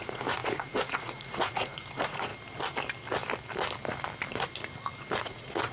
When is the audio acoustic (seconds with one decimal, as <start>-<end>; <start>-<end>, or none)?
2.3-5.2